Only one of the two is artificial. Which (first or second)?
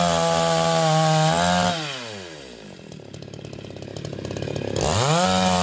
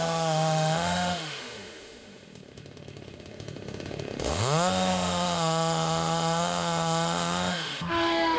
second